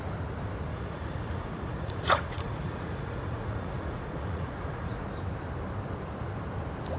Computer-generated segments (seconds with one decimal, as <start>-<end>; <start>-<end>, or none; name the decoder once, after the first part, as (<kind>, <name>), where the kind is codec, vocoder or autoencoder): 0.7-4.9 (vocoder, Vocos)